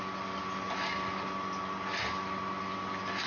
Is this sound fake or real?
real